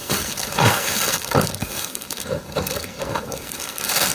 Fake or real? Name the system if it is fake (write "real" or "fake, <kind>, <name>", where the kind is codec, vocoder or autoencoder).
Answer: fake, codec, SNAC